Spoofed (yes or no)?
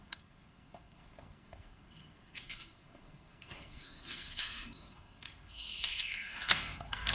yes